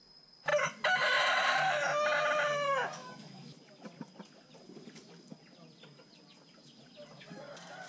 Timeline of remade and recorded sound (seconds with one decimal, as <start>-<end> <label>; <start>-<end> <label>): 0.0-3.0 recorded; 3.0-3.6 remade; 3.6-7.9 recorded